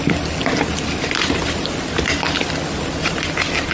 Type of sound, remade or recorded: recorded